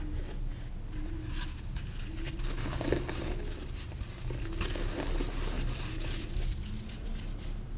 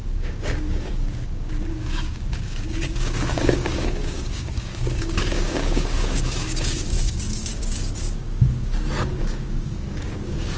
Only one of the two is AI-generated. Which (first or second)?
second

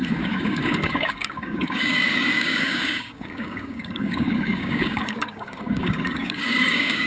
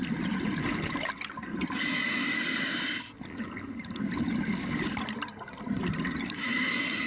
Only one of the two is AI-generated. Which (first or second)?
first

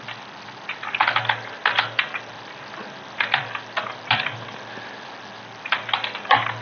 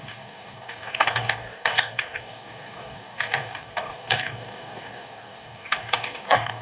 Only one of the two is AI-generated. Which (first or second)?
second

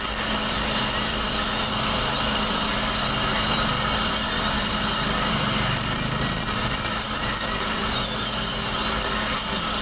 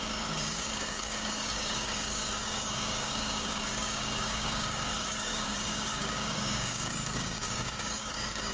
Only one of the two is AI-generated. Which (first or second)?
second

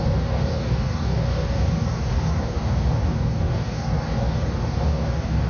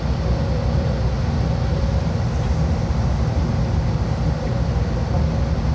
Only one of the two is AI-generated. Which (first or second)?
first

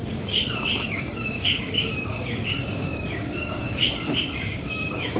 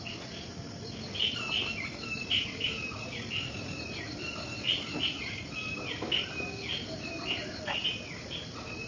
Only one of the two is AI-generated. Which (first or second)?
first